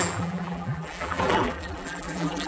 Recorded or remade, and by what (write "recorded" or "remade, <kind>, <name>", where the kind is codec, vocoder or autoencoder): remade, vocoder, BigVGAN v2